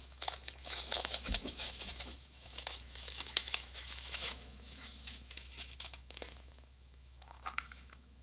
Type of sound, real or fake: fake